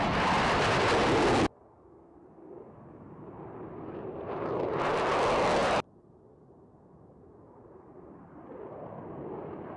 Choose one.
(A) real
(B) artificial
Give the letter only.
A